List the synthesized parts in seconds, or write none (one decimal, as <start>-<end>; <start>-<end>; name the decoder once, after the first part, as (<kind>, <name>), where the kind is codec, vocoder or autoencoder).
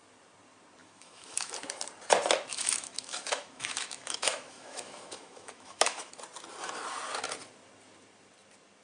0.8-1.5 (autoencoder, DAC-VAE); 2.5-6.1